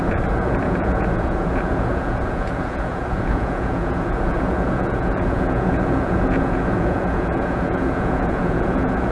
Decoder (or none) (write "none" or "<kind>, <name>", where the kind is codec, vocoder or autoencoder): vocoder, Vocos